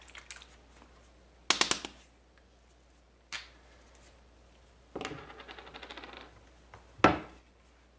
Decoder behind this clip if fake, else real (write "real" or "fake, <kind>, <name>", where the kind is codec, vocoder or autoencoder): real